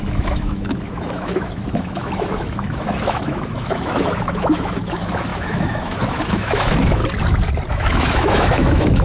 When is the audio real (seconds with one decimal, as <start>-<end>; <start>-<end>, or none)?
7.0-7.7